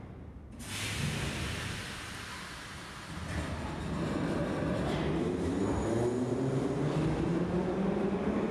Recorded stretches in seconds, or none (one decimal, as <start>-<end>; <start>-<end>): 0.0-8.5